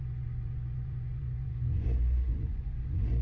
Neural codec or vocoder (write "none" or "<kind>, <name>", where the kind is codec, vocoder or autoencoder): vocoder, Vocos